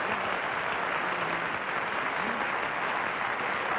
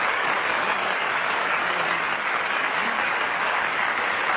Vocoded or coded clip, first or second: second